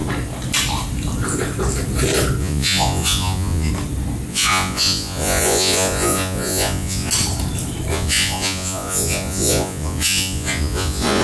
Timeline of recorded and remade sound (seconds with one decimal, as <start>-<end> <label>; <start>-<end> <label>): 0.0-2.4 recorded; 2.4-3.7 remade; 3.7-4.3 recorded; 4.3-7.1 remade; 7.1-7.9 recorded; 7.9-11.2 remade